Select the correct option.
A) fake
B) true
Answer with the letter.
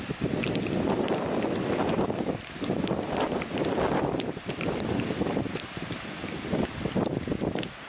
A